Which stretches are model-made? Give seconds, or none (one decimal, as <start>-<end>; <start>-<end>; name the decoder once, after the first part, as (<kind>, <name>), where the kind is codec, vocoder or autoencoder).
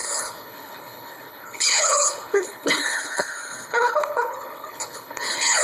0.0-5.6 (codec, HILCodec)